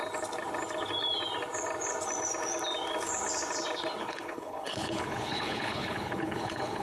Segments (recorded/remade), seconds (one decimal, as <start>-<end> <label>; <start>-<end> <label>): 0.0-4.0 recorded; 4.0-6.8 remade